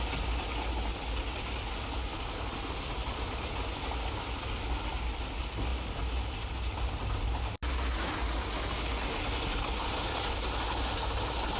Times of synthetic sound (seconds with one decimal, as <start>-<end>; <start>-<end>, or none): none